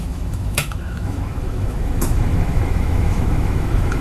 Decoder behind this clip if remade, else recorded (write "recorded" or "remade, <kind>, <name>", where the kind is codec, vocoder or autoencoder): remade, autoencoder, DAC-VAE